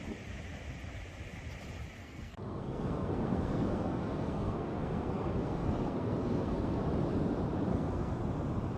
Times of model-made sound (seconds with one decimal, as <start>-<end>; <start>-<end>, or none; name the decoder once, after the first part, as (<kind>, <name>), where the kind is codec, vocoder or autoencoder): 2.0-6.8 (codec, SNAC); 7.7-8.2